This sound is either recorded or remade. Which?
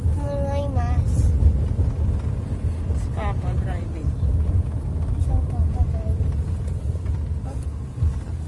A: recorded